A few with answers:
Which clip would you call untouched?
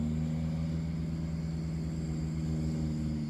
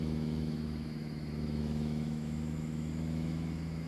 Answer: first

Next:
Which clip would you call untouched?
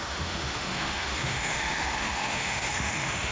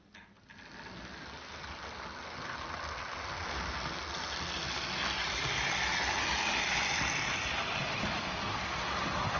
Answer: second